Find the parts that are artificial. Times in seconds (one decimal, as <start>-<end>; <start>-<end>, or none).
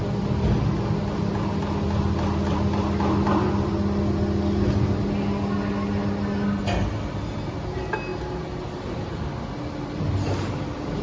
none